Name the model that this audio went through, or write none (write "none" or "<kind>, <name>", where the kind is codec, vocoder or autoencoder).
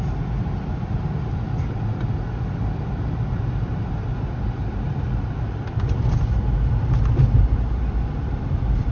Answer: vocoder, BigVGAN v2